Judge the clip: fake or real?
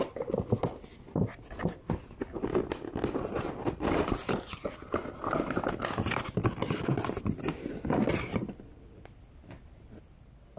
real